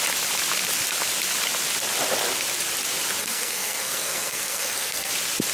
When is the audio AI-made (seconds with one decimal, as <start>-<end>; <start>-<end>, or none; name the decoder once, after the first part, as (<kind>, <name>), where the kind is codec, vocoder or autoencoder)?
3.2-5.1 (codec, SNAC)

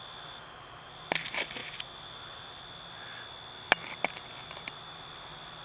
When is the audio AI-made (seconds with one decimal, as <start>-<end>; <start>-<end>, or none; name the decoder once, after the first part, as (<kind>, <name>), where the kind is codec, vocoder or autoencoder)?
none

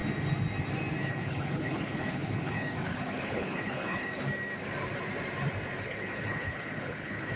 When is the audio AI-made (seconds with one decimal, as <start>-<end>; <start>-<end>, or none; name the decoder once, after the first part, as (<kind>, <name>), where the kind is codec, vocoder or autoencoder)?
1.0-4.1 (codec, HILCodec); 5.8-7.4

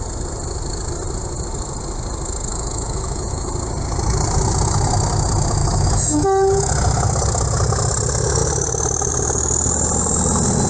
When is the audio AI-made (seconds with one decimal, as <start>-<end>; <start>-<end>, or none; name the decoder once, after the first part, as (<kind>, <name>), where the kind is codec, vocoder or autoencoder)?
2.5-3.5 (autoencoder, DAC-VAE); 5.6-6.7